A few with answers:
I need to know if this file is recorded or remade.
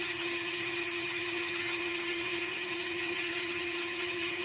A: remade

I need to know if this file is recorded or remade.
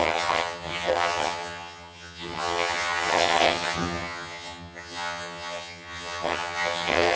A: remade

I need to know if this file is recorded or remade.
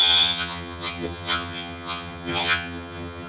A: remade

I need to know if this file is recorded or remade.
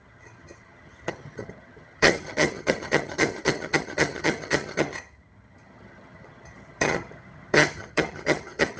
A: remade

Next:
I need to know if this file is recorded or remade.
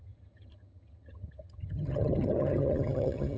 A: remade